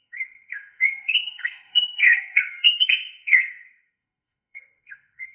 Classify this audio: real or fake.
fake